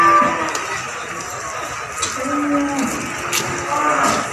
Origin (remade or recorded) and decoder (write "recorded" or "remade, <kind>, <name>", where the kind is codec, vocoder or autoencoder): recorded